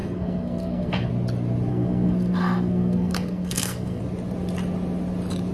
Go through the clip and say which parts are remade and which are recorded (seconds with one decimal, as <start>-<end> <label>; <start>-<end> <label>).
0.0-1.1 remade; 1.1-1.7 recorded; 1.7-4.0 remade; 4.0-5.5 recorded